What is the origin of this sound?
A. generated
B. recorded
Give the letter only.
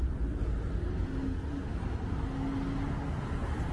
B